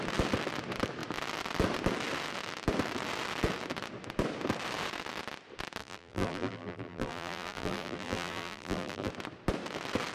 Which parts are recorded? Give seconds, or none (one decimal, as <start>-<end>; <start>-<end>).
0.0-5.8; 9.1-10.1